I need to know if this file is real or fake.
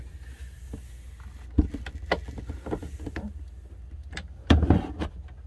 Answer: real